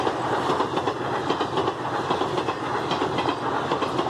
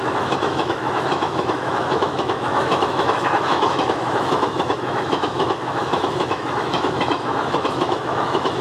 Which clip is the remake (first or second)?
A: second